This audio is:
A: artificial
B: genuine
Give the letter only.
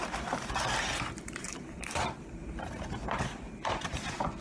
A